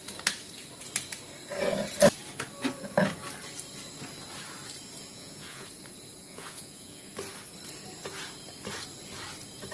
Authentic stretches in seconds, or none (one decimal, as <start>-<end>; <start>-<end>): 0.0-5.1; 5.7-6.2; 7.1-9.7